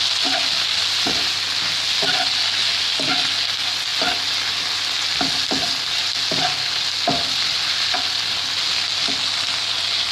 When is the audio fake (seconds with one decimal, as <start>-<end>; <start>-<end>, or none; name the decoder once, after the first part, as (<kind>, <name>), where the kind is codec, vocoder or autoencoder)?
none